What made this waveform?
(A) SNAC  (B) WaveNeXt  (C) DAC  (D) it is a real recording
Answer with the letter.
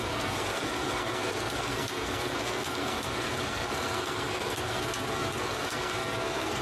A